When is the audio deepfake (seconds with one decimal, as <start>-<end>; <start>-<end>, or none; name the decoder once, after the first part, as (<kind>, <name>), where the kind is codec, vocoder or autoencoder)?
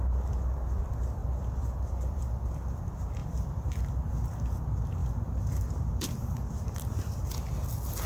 1.2-2.8 (vocoder, BigVGAN v2); 3.2-4.1; 5.0-7.4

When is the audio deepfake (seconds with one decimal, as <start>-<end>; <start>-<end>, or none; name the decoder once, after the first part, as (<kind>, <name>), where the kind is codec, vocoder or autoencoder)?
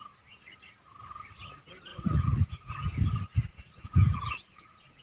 1.9-2.7 (vocoder, Vocos); 3.5-5.0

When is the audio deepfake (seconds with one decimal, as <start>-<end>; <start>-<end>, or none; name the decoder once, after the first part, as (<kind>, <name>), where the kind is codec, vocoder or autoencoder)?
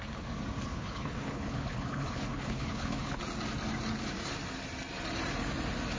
0.7-3.2 (codec, HILCodec)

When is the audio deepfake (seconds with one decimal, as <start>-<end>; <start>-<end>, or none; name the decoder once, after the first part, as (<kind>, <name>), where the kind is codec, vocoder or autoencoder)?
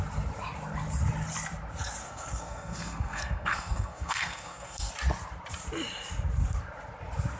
2.0-4.9 (codec, SNAC)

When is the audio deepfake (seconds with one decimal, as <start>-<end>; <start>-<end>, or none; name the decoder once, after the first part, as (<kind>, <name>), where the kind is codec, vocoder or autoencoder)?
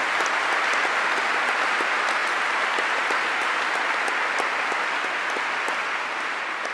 none